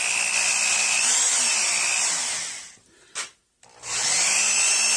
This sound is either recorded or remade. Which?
recorded